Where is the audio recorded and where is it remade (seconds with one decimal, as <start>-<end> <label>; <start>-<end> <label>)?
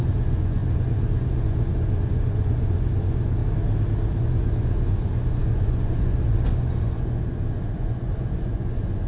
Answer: 0.0-3.4 remade; 3.4-4.2 recorded; 4.2-9.1 remade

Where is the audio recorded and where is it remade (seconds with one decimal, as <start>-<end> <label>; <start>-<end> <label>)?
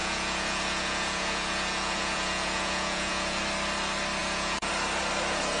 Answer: 0.0-3.4 remade; 3.4-4.2 recorded; 4.2-4.7 remade; 4.7-5.6 recorded